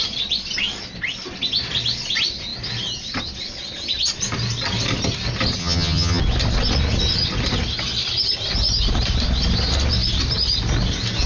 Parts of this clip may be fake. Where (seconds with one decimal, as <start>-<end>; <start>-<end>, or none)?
5.6-6.2